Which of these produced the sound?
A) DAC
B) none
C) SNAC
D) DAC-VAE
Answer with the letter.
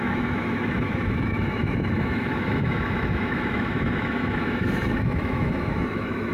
D